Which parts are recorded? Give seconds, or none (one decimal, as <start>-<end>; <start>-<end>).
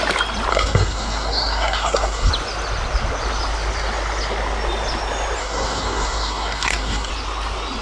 0.0-0.5; 2.3-5.4; 7.1-7.8